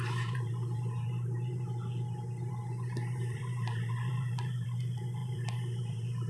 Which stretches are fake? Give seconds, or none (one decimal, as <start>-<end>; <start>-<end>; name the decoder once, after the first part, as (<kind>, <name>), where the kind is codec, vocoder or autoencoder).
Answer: 0.0-1.8 (vocoder, BigVGAN v2); 2.5-6.3